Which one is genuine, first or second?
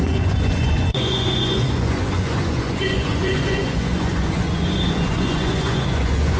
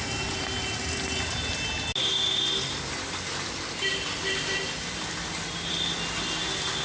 second